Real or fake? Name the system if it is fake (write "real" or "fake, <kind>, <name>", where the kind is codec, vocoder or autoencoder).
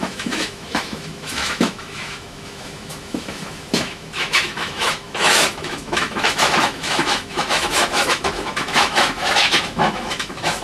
fake, autoencoder, DAC-VAE